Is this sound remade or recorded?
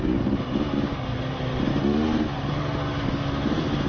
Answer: recorded